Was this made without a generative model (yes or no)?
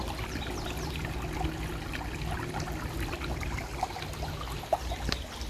yes